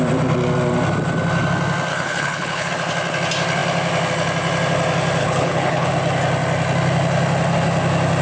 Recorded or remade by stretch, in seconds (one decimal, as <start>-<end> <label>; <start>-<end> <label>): 0.0-1.9 recorded; 1.9-2.7 remade; 2.7-5.2 recorded; 5.2-5.9 remade; 5.9-8.2 recorded